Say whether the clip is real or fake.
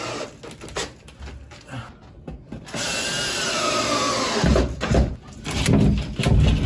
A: real